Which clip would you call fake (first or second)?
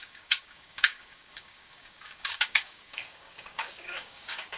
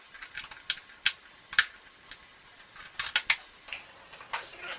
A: first